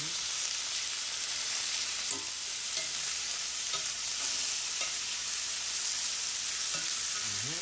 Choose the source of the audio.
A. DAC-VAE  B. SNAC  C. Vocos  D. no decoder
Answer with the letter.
D